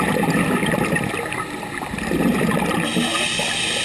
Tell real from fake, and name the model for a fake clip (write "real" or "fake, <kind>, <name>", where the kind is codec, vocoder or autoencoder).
real